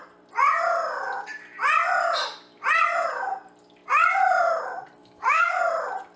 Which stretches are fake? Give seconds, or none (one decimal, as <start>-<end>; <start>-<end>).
5.0-5.6